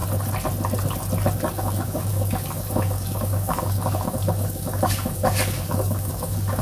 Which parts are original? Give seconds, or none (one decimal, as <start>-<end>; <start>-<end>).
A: 0.0-1.5